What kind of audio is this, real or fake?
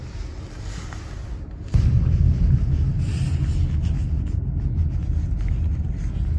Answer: real